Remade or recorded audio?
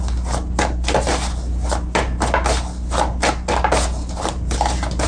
recorded